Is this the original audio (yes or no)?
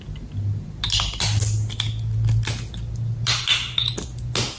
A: yes